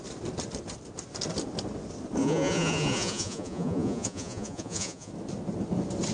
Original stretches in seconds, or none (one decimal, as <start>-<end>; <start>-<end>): 0.0-2.2; 5.1-6.1